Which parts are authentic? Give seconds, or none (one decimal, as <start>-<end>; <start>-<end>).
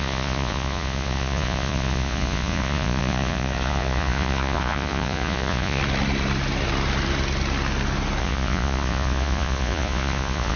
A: 5.8-8.2